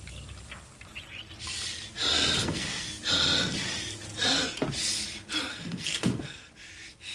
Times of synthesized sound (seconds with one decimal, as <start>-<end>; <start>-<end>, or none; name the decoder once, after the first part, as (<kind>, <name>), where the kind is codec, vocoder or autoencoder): 2.4-3.0 (codec, SNAC); 5.5-6.5